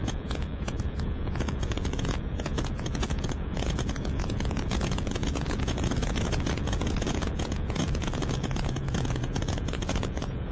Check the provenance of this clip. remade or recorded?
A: remade